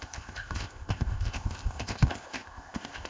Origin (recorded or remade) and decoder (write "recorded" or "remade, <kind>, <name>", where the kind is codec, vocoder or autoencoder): remade, codec, ZipCodec